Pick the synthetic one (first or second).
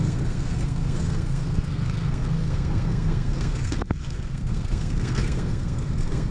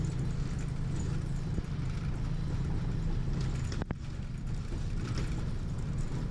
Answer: first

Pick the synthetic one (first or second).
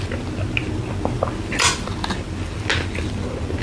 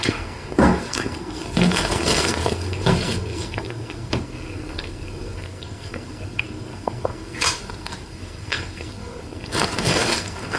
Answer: second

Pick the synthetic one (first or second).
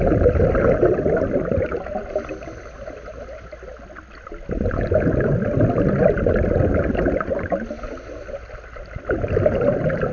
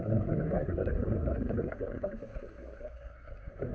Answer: second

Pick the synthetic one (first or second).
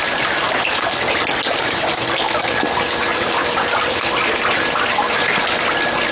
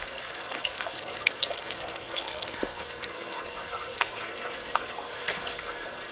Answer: second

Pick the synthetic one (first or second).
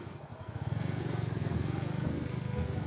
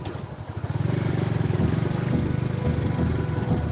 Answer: first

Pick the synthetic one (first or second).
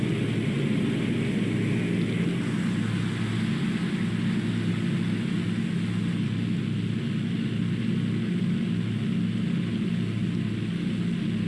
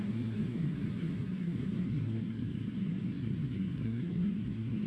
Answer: second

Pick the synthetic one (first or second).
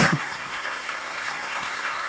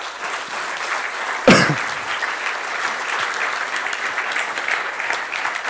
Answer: first